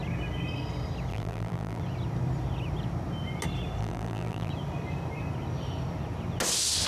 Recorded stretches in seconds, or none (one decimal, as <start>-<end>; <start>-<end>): 0.0-1.1; 1.8-3.8; 4.5-6.9

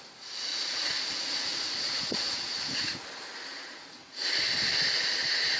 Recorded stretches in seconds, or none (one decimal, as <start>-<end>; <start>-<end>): 0.0-0.5; 3.0-3.5; 4.4-5.6

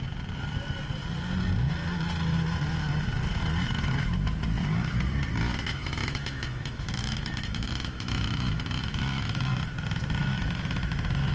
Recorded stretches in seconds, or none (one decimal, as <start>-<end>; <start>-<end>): 0.0-5.7; 9.5-10.2; 10.8-11.3